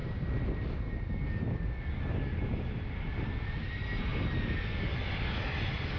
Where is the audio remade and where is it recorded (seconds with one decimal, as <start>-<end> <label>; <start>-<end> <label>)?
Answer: 0.0-6.0 recorded